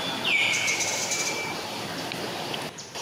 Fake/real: real